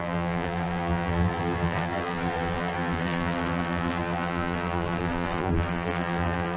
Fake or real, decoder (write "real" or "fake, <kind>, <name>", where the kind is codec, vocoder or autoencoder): fake, vocoder, BigVGAN v2